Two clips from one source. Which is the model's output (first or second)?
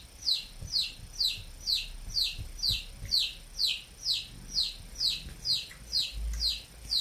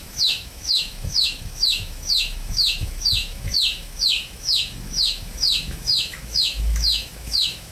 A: second